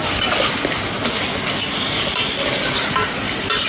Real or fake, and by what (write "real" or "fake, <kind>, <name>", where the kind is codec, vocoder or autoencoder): real